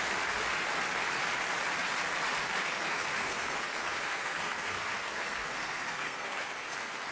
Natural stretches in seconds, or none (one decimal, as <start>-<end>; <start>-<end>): 0.0-2.6

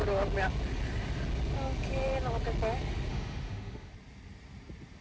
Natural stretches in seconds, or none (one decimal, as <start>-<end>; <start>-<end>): 0.0-3.1; 3.9-5.0

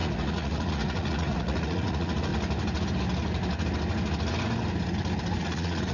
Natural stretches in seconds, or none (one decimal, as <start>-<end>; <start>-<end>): 2.3-5.4

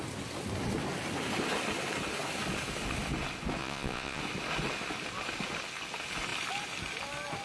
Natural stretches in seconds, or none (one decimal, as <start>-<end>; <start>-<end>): 0.0-3.6; 4.2-7.4

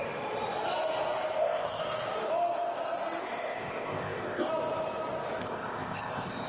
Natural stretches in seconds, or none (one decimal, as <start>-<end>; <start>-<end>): 0.0-1.4; 1.8-3.2; 4.5-5.4